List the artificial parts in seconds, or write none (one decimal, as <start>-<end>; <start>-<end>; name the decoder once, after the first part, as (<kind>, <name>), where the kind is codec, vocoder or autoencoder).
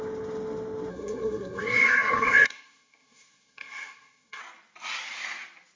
0.9-4.4 (codec, SNAC)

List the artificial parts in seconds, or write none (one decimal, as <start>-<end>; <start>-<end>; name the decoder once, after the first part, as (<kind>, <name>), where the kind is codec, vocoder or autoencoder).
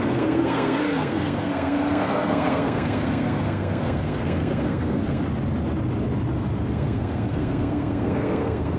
0.0-5.2 (codec, SNAC); 6.7-8.8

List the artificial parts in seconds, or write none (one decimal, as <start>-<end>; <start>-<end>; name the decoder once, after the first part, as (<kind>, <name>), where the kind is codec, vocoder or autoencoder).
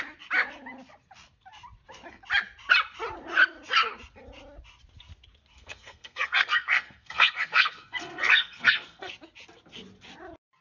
5.5-9.1 (codec, SNAC)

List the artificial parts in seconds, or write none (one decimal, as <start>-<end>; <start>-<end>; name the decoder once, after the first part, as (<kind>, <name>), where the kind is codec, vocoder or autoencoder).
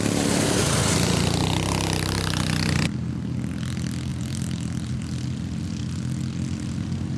none